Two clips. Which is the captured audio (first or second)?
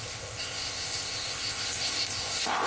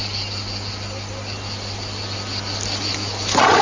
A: second